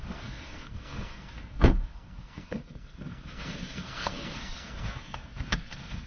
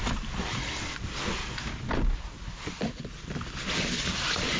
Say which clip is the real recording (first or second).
second